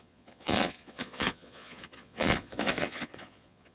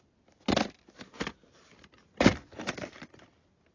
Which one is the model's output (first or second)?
first